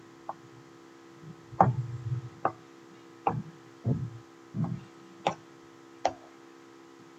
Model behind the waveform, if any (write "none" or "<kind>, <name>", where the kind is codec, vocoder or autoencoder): none